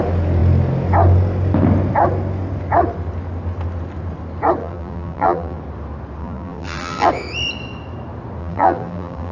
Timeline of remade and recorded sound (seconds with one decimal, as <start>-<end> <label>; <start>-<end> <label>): 0.0-4.6 recorded; 4.6-5.6 remade; 5.6-6.2 recorded; 6.2-7.1 remade; 7.1-8.4 recorded; 8.4-9.3 remade